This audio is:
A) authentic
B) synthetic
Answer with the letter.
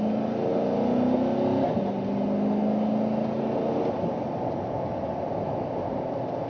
A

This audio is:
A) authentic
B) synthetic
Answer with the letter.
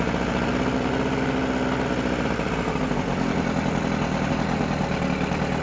A